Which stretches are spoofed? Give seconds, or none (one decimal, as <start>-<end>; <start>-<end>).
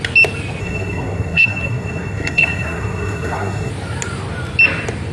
0.6-3.7